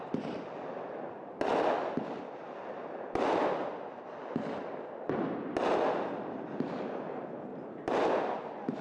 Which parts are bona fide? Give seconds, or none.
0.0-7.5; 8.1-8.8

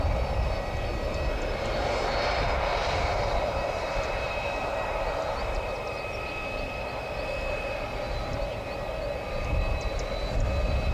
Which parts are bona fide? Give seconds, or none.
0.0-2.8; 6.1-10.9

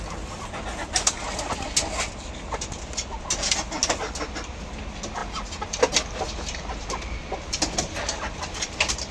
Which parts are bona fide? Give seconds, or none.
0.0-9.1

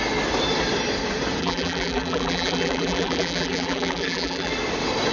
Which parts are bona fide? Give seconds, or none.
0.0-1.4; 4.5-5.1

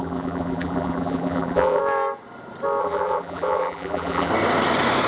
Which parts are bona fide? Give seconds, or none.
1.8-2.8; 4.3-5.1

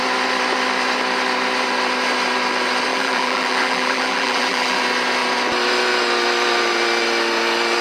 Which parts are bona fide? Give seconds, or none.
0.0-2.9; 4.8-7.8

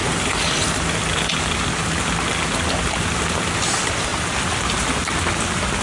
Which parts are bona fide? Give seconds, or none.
0.0-5.8